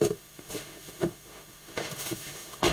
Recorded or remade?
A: remade